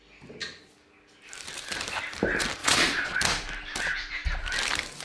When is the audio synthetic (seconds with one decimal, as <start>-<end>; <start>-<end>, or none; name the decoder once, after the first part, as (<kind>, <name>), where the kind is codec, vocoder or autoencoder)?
2.6-3.2 (vocoder, Vocos)